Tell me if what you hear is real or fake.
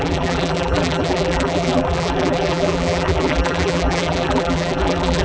fake